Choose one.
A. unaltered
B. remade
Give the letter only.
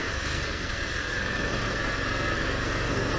B